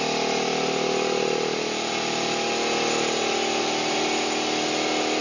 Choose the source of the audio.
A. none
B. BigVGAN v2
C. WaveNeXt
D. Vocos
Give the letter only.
A